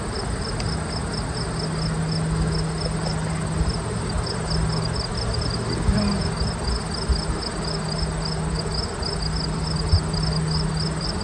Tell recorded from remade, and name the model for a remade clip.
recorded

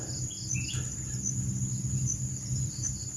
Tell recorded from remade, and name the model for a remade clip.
recorded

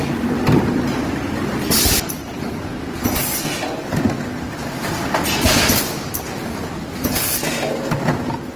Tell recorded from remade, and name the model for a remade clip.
recorded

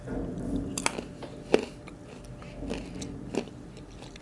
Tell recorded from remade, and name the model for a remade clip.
recorded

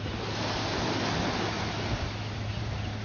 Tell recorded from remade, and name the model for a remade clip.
recorded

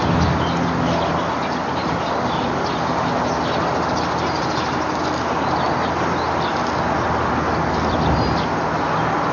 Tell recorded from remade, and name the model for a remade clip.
recorded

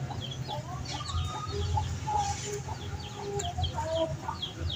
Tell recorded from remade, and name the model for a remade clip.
recorded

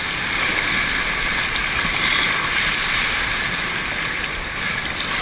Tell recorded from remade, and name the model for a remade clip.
recorded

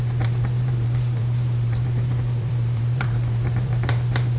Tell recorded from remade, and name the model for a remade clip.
remade, vocoder, BigVGAN v2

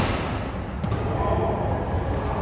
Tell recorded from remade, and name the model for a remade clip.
recorded